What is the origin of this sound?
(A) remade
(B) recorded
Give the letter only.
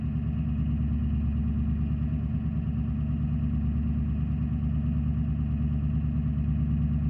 B